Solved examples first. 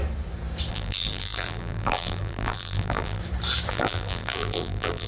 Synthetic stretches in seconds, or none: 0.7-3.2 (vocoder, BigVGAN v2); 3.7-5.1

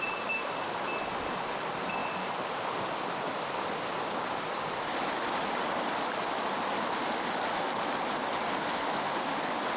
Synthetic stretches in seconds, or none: 2.0-2.9 (vocoder, BigVGAN v2)

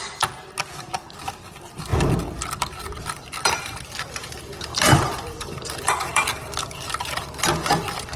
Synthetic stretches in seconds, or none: 1.9-3.8 (vocoder, BigVGAN v2); 4.7-6.7

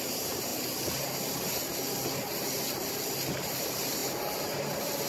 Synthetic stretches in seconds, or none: 0.0-0.5 (vocoder, BigVGAN v2); 3.6-5.1

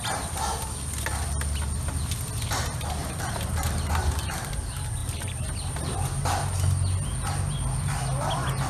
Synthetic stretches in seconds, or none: 3.0-4.5 (vocoder, BigVGAN v2); 5.0-5.8